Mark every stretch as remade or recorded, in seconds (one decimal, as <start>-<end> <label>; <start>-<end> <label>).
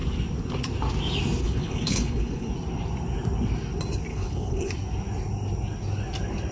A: 0.0-1.4 recorded; 1.4-2.5 remade; 2.5-4.1 recorded; 4.1-4.7 remade; 4.7-6.5 recorded